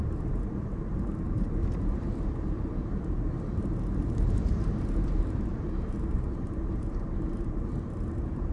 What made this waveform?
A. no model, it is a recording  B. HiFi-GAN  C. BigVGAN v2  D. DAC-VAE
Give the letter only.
C